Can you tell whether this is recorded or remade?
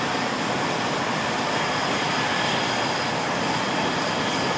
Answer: recorded